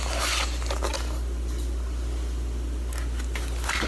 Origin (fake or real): real